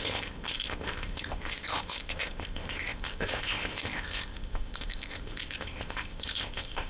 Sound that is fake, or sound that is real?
fake